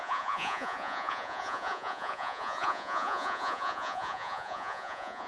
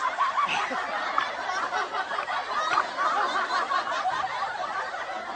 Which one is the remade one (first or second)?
first